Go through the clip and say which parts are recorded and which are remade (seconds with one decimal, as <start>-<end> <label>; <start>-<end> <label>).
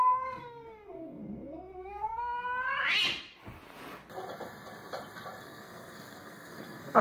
0.0-2.7 remade; 2.7-5.4 recorded; 5.4-7.0 remade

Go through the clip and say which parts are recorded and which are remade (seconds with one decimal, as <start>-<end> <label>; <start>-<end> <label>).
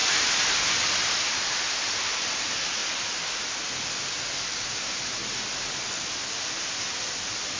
0.0-2.8 remade; 2.8-4.1 recorded; 4.1-5.2 remade; 5.2-6.4 recorded; 6.4-7.6 remade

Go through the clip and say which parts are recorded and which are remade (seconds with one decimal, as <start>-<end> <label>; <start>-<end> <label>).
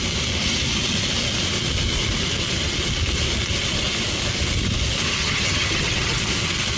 0.0-5.2 recorded; 5.2-6.2 remade; 6.2-6.8 recorded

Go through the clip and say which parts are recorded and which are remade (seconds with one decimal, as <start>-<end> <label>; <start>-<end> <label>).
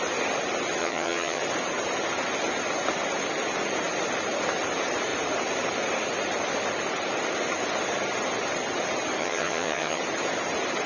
0.0-0.8 recorded; 0.8-1.4 remade; 1.4-9.2 recorded; 9.2-10.0 remade; 10.0-10.9 recorded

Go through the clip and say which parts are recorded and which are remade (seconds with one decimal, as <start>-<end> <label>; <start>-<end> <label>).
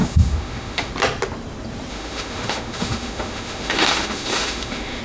0.0-0.9 remade; 0.9-1.9 recorded; 1.9-5.0 remade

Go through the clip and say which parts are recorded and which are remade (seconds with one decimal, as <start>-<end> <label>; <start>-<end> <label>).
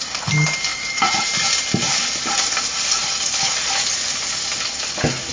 0.0-0.7 recorded; 0.7-1.3 remade; 1.3-5.3 recorded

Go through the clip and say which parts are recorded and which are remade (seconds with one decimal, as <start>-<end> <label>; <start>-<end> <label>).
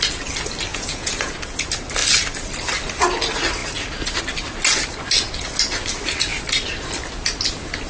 0.0-0.7 recorded; 0.7-1.3 remade; 1.3-7.9 recorded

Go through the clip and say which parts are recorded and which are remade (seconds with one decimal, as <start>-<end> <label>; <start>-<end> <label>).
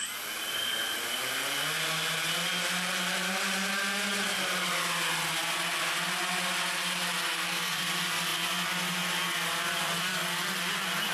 0.0-7.3 recorded; 7.3-7.8 remade; 7.8-11.1 recorded